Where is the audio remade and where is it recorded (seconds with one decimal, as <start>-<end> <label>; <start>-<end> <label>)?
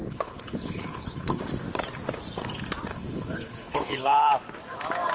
0.0-1.4 remade; 1.4-2.9 recorded; 2.9-4.3 remade; 4.3-5.1 recorded